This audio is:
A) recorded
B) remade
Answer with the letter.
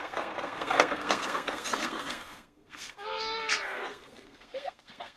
B